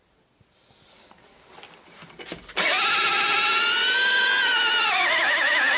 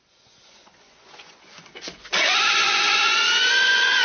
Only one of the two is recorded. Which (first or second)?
first